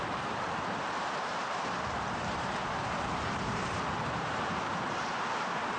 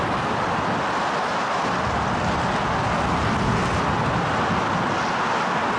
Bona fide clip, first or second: second